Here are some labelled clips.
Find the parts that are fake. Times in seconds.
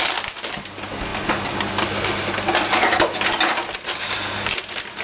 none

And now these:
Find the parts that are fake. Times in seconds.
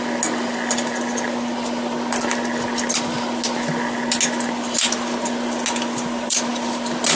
none